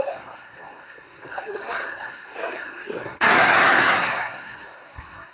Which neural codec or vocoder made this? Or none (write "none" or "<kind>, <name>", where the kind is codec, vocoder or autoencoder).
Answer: codec, SNAC